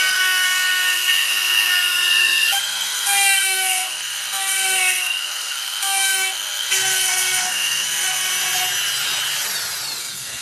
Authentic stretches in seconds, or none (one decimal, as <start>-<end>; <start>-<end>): 8.3-10.0